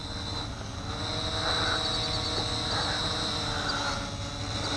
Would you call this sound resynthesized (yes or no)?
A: no